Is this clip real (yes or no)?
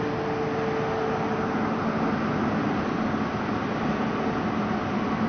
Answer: yes